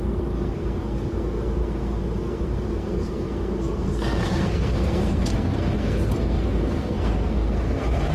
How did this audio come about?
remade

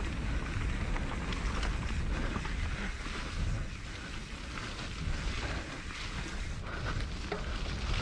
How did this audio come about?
recorded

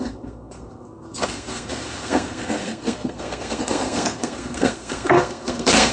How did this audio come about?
remade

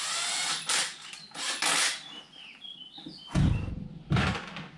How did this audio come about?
recorded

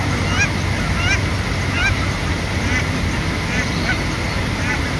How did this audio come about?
recorded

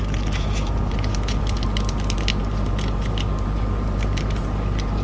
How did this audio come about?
recorded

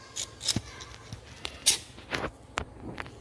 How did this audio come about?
recorded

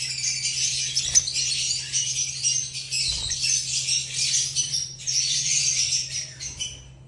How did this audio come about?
recorded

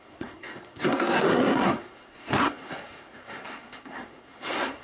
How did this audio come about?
remade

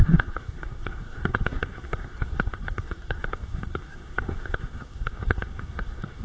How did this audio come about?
remade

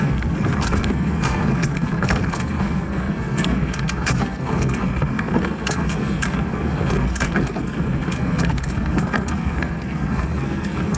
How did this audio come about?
remade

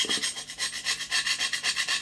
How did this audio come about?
recorded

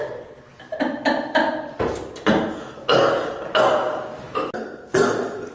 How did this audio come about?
recorded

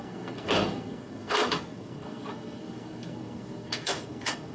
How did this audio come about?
remade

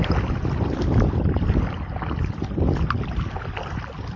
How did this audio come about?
recorded